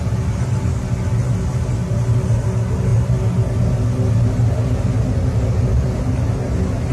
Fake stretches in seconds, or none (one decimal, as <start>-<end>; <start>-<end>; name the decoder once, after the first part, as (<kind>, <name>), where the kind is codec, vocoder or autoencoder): none